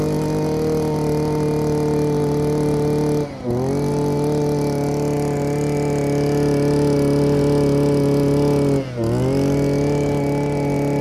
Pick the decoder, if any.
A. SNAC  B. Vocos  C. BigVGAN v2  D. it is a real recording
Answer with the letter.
D